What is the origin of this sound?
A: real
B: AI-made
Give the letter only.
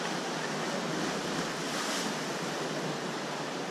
A